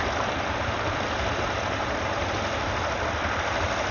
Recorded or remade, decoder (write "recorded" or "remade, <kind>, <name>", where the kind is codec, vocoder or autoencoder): recorded